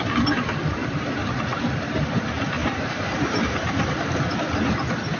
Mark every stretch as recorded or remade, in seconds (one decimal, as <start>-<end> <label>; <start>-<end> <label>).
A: 0.0-0.8 recorded; 0.8-1.3 remade; 1.3-2.6 recorded; 2.6-4.0 remade; 4.0-5.2 recorded